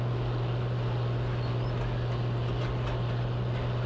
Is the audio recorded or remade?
recorded